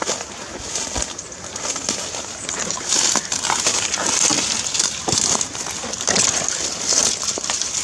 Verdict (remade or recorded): recorded